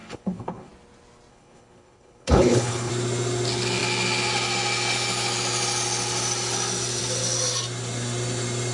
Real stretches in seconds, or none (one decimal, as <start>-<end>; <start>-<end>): 0.7-1.3; 2.9-8.7